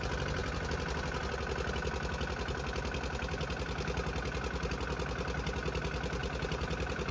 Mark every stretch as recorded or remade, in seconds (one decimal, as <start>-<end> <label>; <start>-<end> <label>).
0.0-6.2 recorded; 6.2-7.1 remade